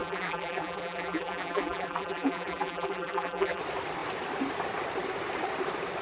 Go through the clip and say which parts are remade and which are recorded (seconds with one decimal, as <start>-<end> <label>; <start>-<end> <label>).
0.0-3.6 remade; 3.6-6.0 recorded

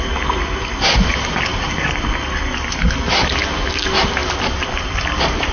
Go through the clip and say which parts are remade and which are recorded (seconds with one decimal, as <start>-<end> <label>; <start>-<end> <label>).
0.0-4.2 recorded; 4.2-5.5 remade

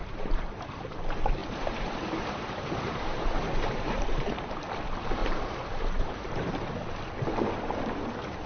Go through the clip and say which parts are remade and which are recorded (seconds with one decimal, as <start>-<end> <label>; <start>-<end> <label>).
0.0-0.8 remade; 0.8-1.4 recorded; 1.4-4.5 remade; 4.5-5.2 recorded; 5.2-6.8 remade; 6.8-8.5 recorded

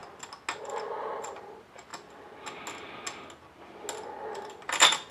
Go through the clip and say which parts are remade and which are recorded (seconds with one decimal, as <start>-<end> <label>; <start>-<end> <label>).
0.0-0.6 recorded; 0.6-1.9 remade; 1.9-4.5 recorded; 4.5-5.1 remade

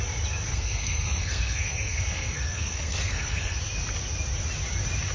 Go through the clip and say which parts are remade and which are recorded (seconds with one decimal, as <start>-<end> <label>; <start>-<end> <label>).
0.0-0.5 recorded; 0.5-3.6 remade; 3.6-5.1 recorded

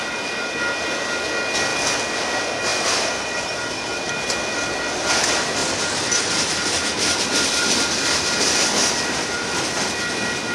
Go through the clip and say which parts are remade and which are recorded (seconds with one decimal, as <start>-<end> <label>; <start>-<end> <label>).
0.0-1.7 recorded; 1.7-2.2 remade; 2.2-2.7 recorded; 2.7-4.1 remade; 4.1-5.6 recorded; 5.6-9.6 remade; 9.6-10.5 recorded